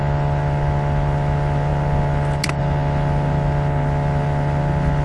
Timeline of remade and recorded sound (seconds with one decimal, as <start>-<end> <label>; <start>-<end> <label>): 0.0-5.0 recorded